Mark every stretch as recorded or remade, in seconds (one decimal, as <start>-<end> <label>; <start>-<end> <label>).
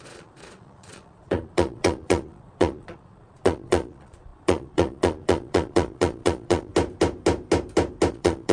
0.0-6.7 remade; 6.7-8.1 recorded; 8.1-8.5 remade